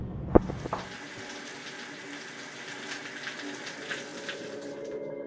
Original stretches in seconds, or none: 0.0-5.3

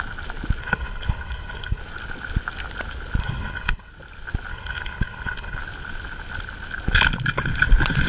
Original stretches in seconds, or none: 0.0-0.6; 1.8-3.2; 3.9-4.5; 5.6-8.1

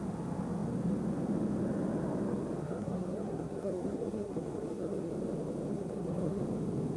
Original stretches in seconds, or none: 0.0-2.6; 5.1-5.7; 6.4-7.0

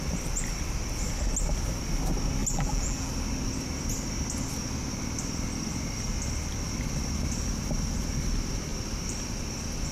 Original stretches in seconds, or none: 0.0-2.4; 3.1-9.9

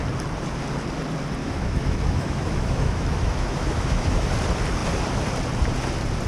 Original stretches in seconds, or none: 0.0-1.4; 4.3-6.3

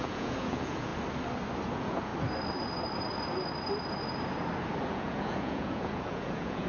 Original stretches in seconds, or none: 0.9-1.7; 2.1-4.9